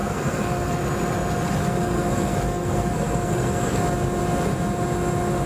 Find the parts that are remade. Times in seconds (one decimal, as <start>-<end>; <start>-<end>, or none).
0.0-0.8; 1.6-3.8